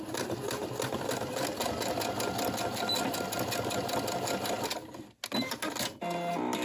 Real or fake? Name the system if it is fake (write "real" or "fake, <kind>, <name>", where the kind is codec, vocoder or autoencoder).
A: real